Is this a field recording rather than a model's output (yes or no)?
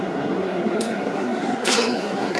no